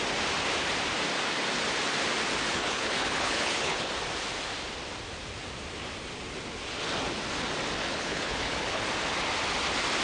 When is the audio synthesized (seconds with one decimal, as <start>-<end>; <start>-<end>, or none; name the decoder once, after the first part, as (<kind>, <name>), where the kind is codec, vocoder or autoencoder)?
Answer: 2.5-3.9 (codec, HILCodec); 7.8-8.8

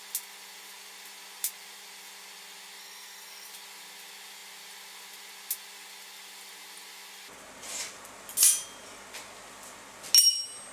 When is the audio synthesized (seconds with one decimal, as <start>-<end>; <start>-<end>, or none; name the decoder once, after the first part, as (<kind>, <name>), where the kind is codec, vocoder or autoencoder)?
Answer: 2.8-3.5 (codec, SNAC)

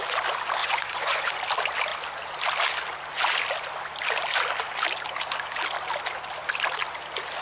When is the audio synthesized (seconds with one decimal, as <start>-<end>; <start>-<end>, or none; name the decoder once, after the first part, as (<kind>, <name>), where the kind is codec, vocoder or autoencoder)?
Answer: 0.6-1.4 (vocoder, Vocos)

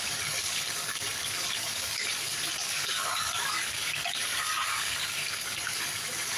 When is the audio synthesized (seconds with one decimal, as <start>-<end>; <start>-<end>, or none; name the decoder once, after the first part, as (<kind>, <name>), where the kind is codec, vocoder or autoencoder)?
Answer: 0.0-6.4 (codec, DAC)